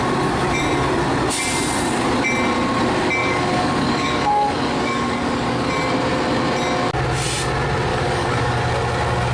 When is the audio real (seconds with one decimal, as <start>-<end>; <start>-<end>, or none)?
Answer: 0.0-3.2; 5.7-7.9; 8.6-9.3